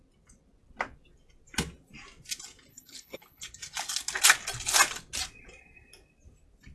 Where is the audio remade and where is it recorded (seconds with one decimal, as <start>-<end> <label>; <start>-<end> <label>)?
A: 0.0-2.7 recorded; 2.7-3.4 remade; 3.4-6.7 recorded